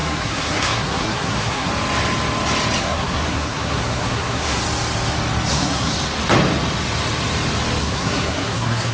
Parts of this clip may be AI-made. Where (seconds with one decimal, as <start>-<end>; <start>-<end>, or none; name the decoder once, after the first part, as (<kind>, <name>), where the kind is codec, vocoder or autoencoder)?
0.0-1.7 (codec, SNAC); 2.8-4.6; 5.5-5.9; 7.8-8.9